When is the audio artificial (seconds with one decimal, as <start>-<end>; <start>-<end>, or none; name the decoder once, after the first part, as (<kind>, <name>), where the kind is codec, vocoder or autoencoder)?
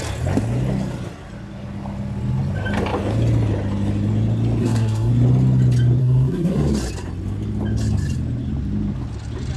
4.6-5.1 (codec, SNAC); 6.0-6.7